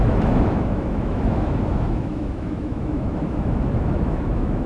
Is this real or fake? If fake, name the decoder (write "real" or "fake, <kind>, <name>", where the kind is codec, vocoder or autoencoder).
fake, autoencoder, DAC-VAE